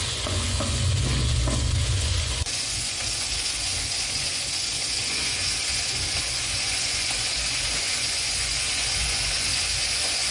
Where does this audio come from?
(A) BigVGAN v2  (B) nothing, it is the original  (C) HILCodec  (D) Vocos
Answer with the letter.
D